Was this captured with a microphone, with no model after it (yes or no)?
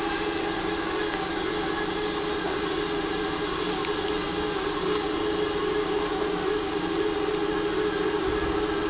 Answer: yes